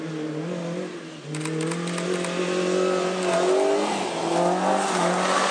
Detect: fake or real real